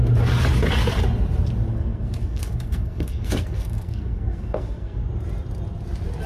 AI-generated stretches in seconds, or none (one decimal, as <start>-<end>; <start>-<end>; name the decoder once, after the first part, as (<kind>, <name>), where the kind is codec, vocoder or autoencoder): 1.7-5.1 (codec, SNAC)